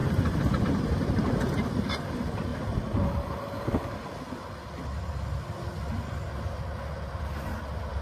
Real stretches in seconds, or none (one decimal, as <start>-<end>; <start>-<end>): 1.2-8.0